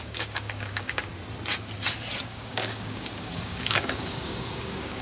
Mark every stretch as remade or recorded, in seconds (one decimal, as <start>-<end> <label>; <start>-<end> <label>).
0.0-1.1 remade; 1.1-2.2 recorded; 2.2-5.0 remade